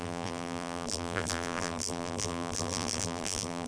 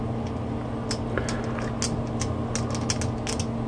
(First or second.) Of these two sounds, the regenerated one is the first